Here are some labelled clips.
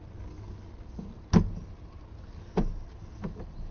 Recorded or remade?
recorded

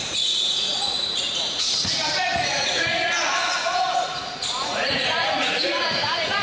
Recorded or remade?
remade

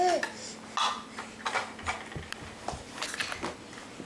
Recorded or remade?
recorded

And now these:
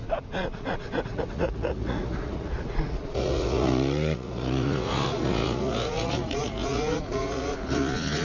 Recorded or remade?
remade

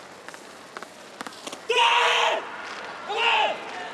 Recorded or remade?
recorded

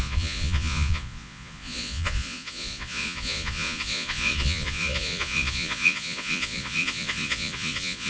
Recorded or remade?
remade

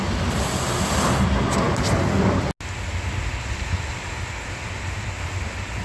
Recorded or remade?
recorded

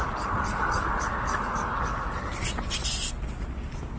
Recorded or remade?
recorded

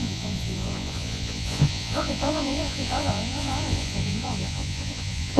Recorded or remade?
remade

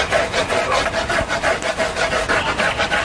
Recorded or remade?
recorded